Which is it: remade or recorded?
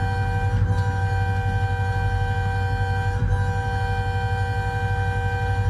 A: recorded